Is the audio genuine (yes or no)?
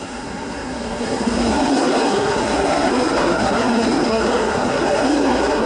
no